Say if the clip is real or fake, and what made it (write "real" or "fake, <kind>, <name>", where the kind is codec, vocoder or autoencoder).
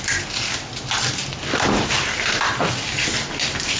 real